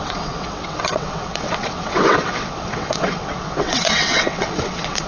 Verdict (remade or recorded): remade